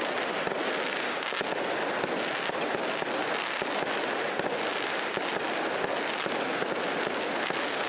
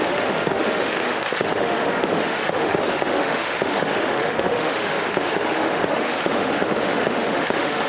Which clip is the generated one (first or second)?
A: second